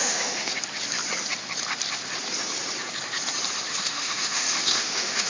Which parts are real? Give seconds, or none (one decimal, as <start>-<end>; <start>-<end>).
0.5-3.7